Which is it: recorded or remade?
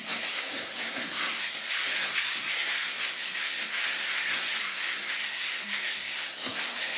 remade